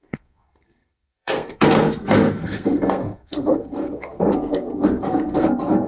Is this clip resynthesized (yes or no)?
yes